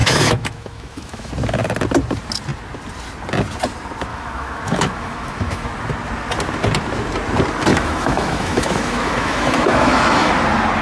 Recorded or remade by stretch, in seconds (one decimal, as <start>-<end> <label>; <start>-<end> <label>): 0.0-1.3 remade; 1.3-4.1 recorded; 4.1-5.7 remade; 5.7-7.7 recorded; 7.7-10.3 remade; 10.3-10.8 recorded